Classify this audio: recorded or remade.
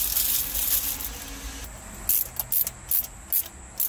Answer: recorded